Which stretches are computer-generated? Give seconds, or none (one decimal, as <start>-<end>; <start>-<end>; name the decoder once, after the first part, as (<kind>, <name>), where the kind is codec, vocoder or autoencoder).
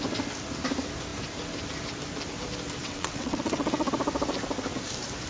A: 2.8-3.9 (vocoder, WaveNeXt)